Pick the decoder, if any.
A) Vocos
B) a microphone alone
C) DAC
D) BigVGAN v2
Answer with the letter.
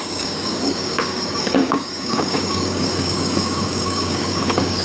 C